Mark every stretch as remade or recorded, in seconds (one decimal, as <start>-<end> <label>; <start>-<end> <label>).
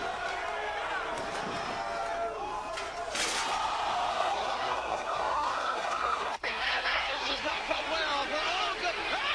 0.0-4.1 recorded; 4.1-7.8 remade; 7.8-9.3 recorded